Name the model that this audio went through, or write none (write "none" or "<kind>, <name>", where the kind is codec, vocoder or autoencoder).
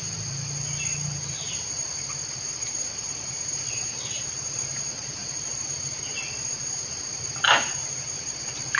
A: none